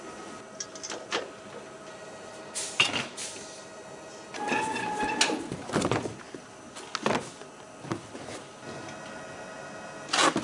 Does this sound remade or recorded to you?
recorded